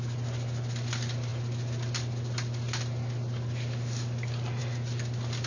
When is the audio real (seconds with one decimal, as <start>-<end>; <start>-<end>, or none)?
0.0-5.5